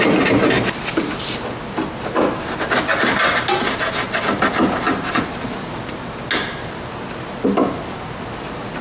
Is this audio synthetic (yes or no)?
no